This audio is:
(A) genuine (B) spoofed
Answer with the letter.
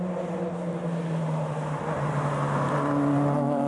A